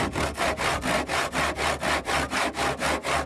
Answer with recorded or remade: recorded